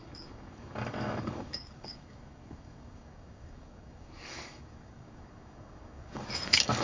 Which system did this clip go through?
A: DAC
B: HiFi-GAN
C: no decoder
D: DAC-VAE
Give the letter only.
A